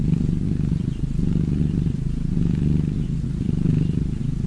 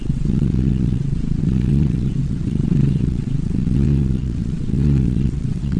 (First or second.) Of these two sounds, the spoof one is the second